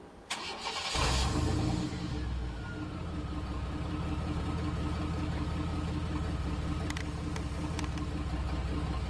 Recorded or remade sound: recorded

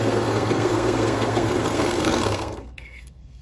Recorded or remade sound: remade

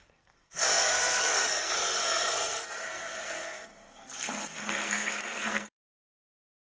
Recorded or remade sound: remade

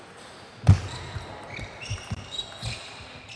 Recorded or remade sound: recorded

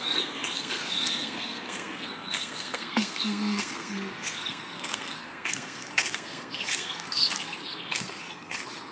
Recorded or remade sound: remade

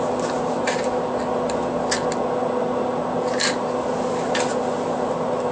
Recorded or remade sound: recorded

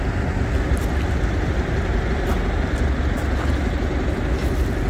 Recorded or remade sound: recorded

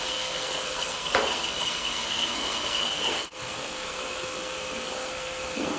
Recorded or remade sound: remade